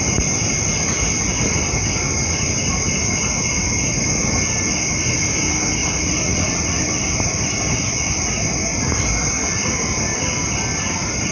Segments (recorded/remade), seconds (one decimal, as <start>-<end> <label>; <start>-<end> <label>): 0.0-5.8 recorded; 5.8-6.8 remade; 6.8-11.3 recorded